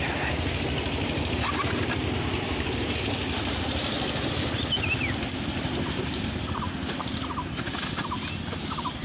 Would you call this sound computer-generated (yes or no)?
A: no